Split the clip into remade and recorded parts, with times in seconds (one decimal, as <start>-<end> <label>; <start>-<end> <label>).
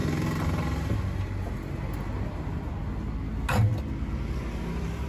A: 0.0-5.1 recorded